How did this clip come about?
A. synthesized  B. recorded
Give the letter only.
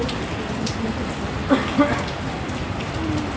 B